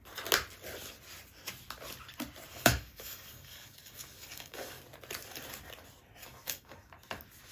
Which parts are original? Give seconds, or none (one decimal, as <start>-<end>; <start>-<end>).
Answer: 0.0-2.5; 4.8-6.2; 6.9-7.5